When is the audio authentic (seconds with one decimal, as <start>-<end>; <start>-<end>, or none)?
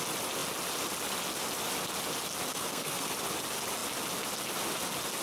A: 0.0-2.5; 3.1-5.2